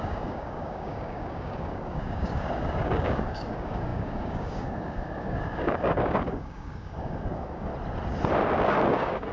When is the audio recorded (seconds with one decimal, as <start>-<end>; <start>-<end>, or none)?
7.7-8.9